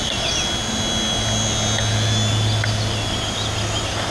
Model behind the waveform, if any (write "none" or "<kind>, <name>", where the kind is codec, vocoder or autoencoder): none